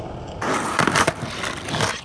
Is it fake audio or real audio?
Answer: real